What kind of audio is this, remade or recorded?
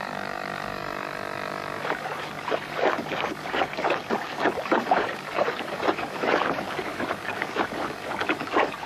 remade